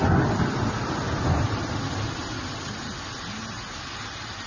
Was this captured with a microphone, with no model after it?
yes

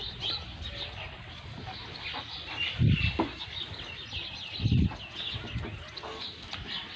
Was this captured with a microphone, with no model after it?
yes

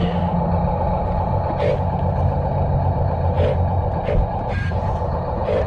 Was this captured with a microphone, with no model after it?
yes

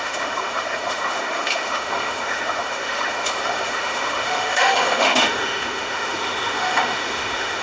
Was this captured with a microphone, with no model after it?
no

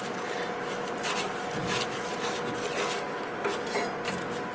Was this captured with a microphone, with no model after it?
yes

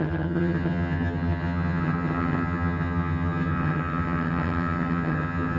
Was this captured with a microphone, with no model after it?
no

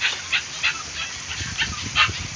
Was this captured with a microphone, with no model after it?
yes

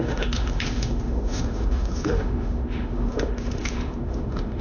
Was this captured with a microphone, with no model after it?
no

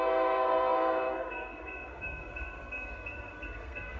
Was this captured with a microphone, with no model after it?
no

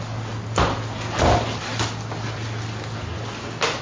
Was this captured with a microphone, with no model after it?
yes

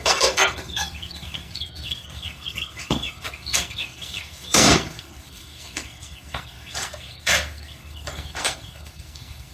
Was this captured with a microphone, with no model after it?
no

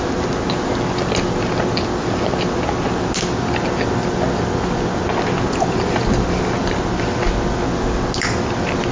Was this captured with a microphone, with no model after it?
yes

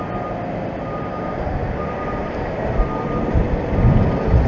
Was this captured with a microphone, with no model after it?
yes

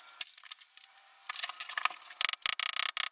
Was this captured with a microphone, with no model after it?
yes